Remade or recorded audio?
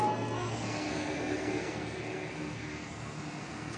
remade